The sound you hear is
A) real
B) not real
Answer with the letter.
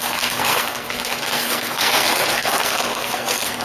B